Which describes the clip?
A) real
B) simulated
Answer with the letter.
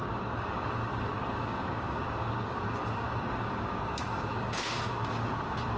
B